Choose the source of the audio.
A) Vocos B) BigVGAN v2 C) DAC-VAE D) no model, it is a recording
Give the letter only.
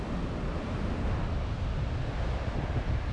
D